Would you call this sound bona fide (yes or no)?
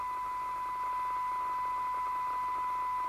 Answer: yes